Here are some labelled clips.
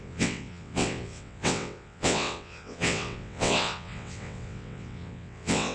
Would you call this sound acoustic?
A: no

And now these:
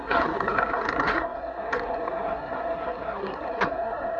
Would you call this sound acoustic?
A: no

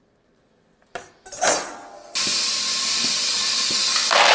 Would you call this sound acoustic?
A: yes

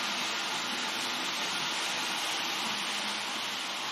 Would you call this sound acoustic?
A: yes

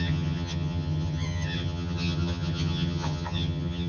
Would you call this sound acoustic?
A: no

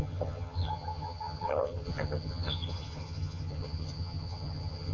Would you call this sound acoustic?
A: no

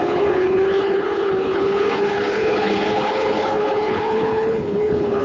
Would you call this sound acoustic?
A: no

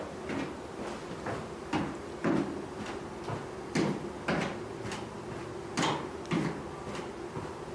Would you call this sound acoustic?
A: yes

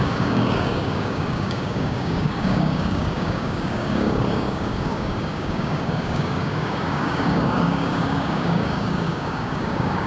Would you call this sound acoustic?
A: no